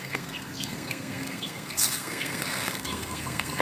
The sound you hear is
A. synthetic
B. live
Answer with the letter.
A